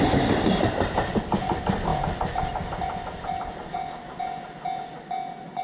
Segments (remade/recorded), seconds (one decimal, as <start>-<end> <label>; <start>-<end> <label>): 0.0-5.6 recorded